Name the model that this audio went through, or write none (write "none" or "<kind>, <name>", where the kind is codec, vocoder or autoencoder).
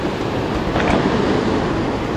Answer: none